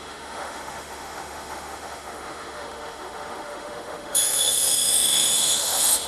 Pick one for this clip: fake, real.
fake